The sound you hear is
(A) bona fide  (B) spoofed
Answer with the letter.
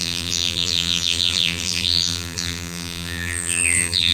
B